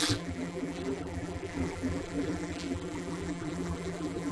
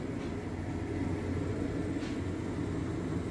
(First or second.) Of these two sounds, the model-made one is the first